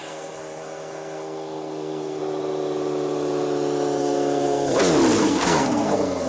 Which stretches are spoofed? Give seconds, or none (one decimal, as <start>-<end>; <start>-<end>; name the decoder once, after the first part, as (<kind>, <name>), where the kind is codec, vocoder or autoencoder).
0.0-2.2 (codec, SNAC); 4.0-4.8; 5.2-6.3